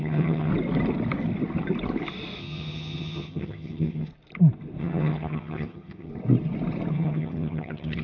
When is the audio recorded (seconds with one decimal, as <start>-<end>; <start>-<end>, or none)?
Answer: 0.5-2.4; 4.1-4.8; 6.1-6.9